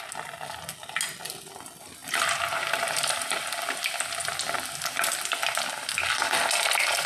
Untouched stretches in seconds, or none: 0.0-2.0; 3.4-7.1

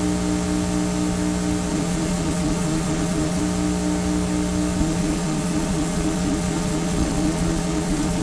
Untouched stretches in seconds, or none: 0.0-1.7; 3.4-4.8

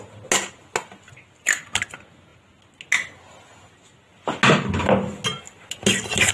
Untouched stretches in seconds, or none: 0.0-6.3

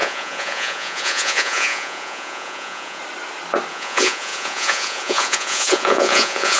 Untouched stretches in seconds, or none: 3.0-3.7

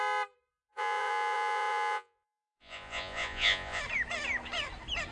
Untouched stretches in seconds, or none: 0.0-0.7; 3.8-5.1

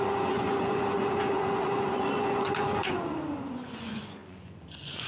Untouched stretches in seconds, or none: none

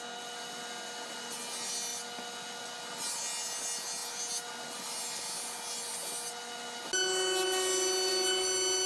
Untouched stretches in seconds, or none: 0.0-8.9

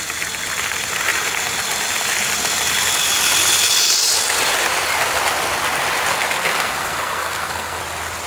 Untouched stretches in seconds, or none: 0.0-6.1; 7.8-8.3